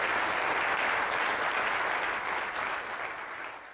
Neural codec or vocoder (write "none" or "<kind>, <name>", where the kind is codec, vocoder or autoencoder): none